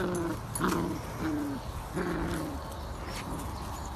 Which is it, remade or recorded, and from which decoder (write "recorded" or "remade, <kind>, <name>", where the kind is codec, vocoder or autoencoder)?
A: recorded